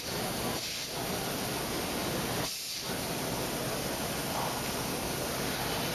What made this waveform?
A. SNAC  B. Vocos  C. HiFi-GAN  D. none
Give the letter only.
D